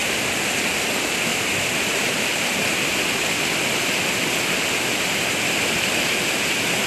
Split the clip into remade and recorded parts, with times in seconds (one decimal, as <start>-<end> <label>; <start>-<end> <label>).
0.0-0.7 remade; 0.7-1.3 recorded; 1.3-2.9 remade; 2.9-6.9 recorded